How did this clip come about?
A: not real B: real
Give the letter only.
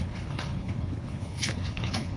A